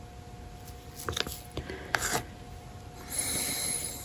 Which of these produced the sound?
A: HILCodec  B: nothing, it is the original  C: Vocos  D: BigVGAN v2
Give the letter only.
B